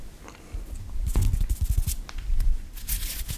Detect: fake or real real